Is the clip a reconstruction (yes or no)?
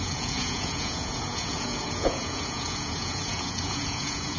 yes